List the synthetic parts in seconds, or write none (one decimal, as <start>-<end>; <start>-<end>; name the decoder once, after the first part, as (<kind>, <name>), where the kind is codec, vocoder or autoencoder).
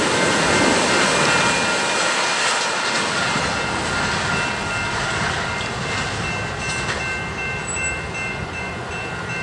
8.3-8.9 (vocoder, Vocos)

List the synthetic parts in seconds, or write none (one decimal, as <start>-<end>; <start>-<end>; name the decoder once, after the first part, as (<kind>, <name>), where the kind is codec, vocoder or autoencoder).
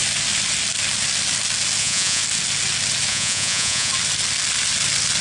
1.8-2.2 (vocoder, Vocos); 3.1-3.9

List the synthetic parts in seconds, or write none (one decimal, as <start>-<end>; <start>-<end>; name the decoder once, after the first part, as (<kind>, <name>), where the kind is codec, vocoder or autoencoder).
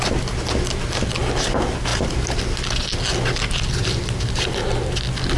none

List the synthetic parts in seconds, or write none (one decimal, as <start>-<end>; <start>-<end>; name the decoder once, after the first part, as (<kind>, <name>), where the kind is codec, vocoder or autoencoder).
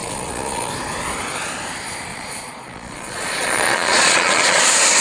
0.0-0.7 (vocoder, Vocos); 2.1-4.6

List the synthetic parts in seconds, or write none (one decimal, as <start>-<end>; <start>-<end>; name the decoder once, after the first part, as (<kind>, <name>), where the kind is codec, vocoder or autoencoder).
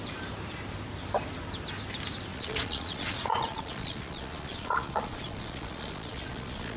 2.3-6.8 (vocoder, Vocos)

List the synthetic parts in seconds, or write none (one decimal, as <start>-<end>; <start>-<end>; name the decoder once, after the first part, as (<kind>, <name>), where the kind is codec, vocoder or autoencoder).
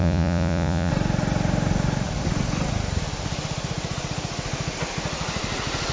0.0-0.9 (vocoder, Vocos)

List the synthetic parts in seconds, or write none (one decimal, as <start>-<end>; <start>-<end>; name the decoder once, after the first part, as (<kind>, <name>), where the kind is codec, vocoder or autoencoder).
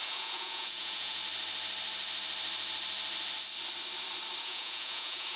0.0-1.2 (vocoder, Vocos); 4.4-5.4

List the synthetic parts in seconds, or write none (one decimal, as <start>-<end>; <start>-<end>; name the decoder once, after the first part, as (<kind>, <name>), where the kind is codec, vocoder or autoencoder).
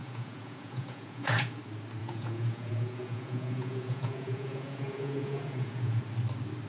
0.0-1.6 (vocoder, Vocos); 2.0-6.0